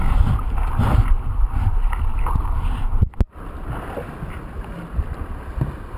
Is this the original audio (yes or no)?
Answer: yes